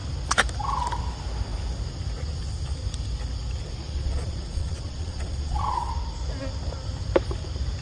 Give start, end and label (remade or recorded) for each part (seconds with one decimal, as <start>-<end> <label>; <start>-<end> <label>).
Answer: 0.0-3.8 recorded; 3.8-5.9 remade; 5.9-7.8 recorded